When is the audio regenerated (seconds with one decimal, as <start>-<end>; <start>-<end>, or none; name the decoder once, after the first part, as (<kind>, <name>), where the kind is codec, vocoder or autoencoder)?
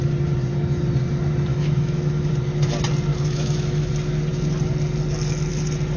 1.5-2.3 (autoencoder, DAC-VAE); 3.1-3.9